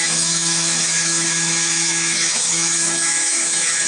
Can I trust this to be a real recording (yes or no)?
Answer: no